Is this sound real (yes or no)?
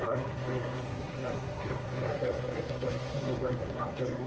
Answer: no